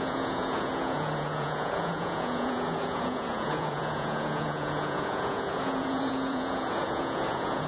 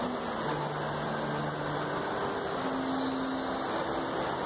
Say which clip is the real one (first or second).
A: second